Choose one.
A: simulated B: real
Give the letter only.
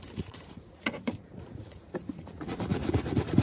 A